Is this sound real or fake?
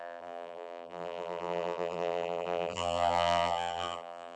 fake